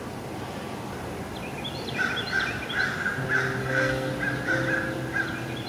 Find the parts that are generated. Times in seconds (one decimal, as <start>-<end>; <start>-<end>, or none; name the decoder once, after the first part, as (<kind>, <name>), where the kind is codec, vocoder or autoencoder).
3.6-4.1 (codec, SNAC)